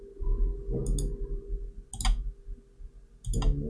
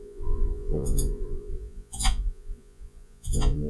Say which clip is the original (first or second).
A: first